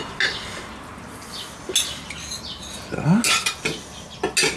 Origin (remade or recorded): recorded